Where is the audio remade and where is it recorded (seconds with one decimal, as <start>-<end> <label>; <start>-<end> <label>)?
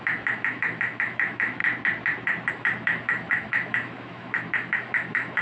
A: 0.0-1.6 remade; 1.6-2.5 recorded; 2.5-5.4 remade